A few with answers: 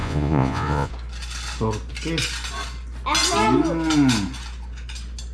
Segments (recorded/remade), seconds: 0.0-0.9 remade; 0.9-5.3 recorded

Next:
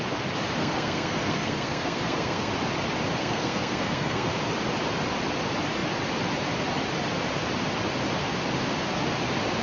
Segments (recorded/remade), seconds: 0.0-0.6 recorded; 0.6-2.5 remade; 2.5-3.2 recorded; 3.2-4.3 remade; 4.3-9.6 recorded